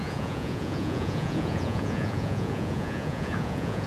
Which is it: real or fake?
fake